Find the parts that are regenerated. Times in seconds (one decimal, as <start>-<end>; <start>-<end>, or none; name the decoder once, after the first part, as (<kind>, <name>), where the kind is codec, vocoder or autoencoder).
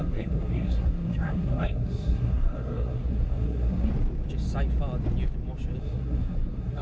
0.0-3.9 (codec, SNAC); 5.8-6.8